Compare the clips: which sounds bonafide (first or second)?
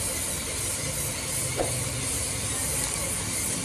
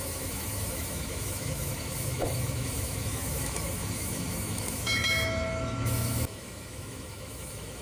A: first